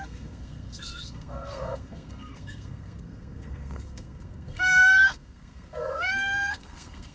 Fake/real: fake